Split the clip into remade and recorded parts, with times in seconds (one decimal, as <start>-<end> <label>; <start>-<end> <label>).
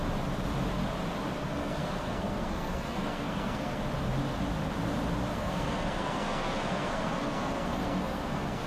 0.0-1.4 recorded; 1.4-3.8 remade; 3.8-5.3 recorded; 5.3-8.7 remade